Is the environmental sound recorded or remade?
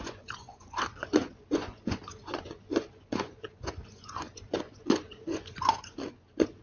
remade